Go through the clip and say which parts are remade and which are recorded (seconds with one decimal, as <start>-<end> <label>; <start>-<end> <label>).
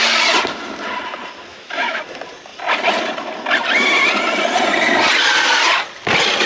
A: 0.0-1.5 recorded; 1.5-2.0 remade; 2.0-6.5 recorded